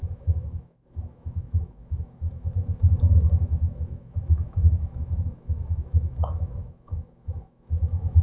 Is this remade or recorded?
remade